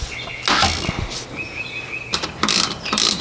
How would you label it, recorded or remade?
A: recorded